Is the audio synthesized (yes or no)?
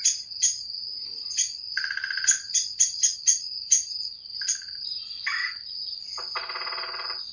no